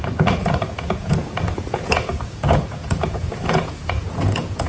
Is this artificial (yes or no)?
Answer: yes